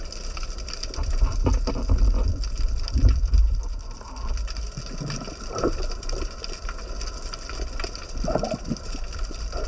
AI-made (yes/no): yes